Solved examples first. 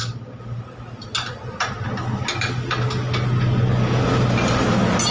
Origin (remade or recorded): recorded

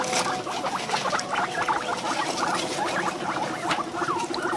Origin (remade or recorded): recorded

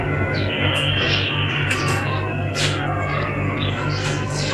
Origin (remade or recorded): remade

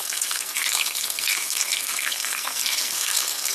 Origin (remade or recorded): remade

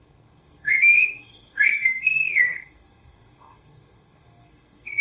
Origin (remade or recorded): remade